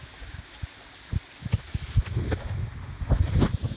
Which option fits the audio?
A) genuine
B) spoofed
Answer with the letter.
A